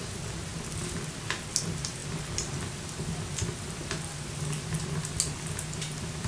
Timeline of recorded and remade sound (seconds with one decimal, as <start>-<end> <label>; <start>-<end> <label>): 0.0-6.3 recorded